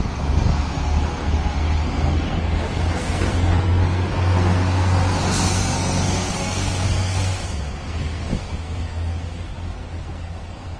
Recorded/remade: remade